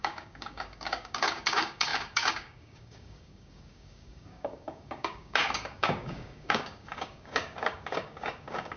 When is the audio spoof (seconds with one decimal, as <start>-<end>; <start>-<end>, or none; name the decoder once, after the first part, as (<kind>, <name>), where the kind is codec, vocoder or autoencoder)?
0.0-8.8 (codec, DAC)